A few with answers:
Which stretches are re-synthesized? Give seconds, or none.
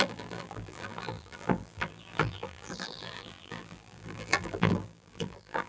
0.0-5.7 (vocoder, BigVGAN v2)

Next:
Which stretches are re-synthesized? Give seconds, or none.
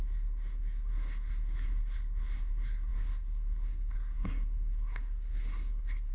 0.0-6.1 (codec, SNAC)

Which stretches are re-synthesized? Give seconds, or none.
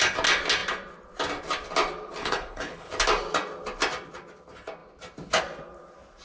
2.2-2.9 (codec, HILCodec)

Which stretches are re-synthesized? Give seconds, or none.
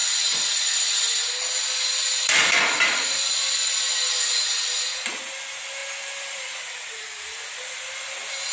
none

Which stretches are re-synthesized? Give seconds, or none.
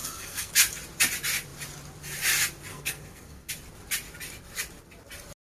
0.0-0.5 (codec, SNAC); 2.7-3.5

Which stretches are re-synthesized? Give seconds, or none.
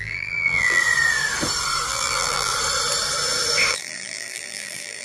0.0-0.8 (vocoder, BigVGAN v2); 1.9-2.5; 3.7-5.0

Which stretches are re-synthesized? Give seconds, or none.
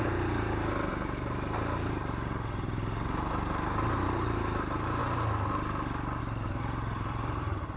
0.0-5.0 (vocoder, BigVGAN v2); 6.2-7.8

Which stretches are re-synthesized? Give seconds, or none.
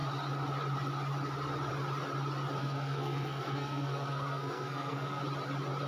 2.6-5.2 (codec, SNAC)